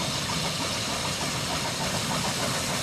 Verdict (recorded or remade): recorded